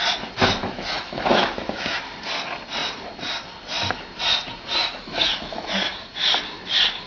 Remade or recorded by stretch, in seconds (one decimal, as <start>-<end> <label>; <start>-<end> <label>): 0.0-0.6 recorded; 0.6-2.0 remade; 2.0-4.8 recorded; 4.8-5.9 remade; 5.9-7.1 recorded